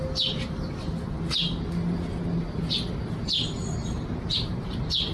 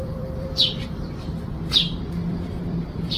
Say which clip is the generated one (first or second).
second